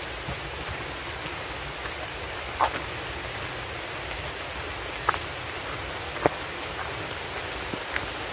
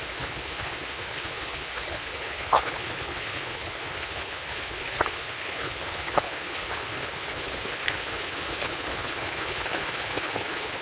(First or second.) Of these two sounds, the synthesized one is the second